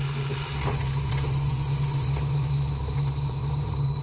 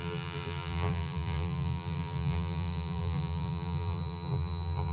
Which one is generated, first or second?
second